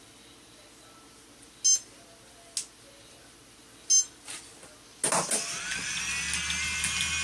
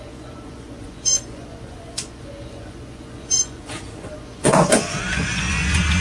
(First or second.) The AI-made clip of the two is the second